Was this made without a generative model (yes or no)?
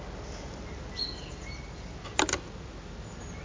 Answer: yes